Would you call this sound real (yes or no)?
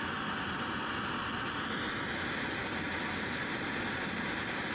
yes